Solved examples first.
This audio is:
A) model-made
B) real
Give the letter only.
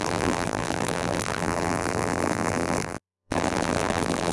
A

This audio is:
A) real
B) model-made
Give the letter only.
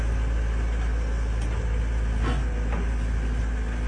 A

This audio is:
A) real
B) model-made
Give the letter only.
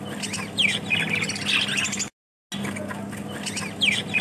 A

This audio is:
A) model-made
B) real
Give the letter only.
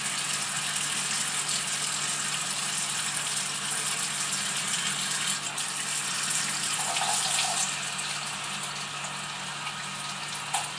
B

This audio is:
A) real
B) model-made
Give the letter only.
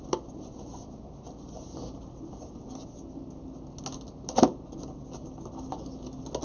A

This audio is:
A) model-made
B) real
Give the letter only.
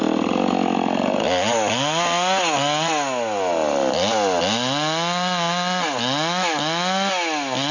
B